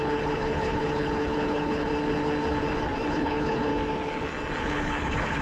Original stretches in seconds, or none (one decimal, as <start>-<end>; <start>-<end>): 1.9-3.1; 3.7-4.6